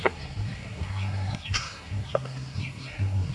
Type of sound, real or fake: fake